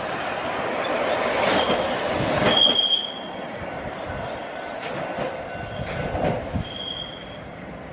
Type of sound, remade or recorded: recorded